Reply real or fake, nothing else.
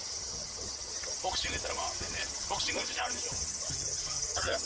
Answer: fake